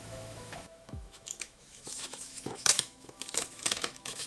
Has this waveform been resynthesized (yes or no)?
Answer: yes